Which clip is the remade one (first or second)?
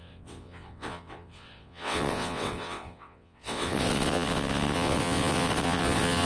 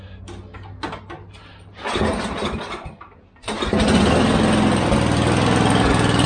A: first